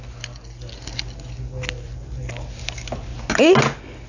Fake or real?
real